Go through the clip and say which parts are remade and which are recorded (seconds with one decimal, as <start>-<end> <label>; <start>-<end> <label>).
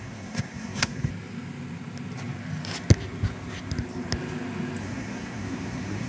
0.0-1.1 remade; 1.1-4.8 recorded; 4.8-6.1 remade